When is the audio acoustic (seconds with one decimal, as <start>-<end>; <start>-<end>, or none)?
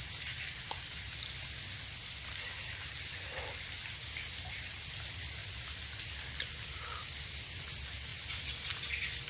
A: 0.0-9.3